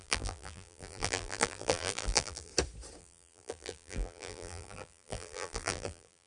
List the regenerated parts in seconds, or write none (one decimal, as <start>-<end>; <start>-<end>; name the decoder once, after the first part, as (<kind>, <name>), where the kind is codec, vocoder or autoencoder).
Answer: 0.0-2.5 (vocoder, BigVGAN v2); 3.0-6.3